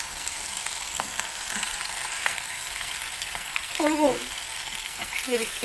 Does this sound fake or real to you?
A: fake